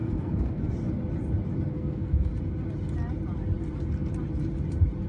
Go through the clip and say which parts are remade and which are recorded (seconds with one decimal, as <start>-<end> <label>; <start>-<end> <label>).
0.0-0.7 remade; 0.7-1.7 recorded; 1.7-2.3 remade; 2.3-5.1 recorded